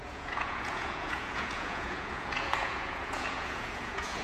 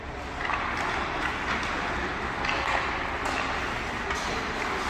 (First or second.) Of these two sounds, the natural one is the second